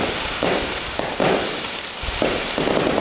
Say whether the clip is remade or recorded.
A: remade